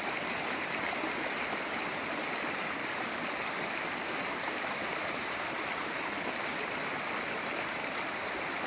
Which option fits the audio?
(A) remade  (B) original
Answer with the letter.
B